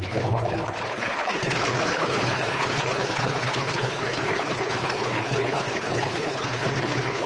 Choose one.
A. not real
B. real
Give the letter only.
A